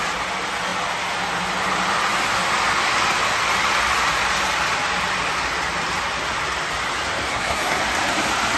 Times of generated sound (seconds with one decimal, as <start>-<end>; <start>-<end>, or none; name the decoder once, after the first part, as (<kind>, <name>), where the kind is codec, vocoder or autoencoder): 7.3-7.8 (codec, SNAC)